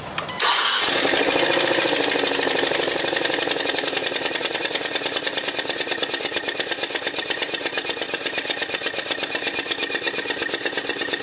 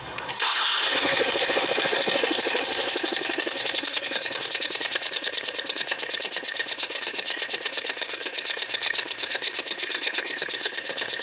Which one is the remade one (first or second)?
second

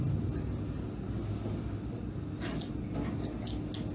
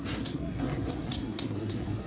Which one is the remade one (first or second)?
second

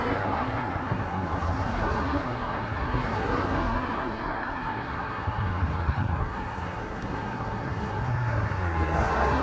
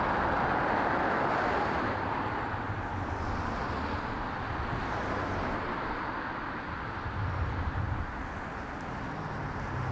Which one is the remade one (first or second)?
first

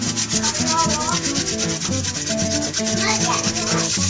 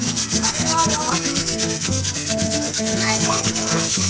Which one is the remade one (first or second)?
second